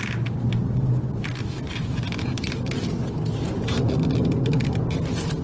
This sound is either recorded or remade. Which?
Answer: recorded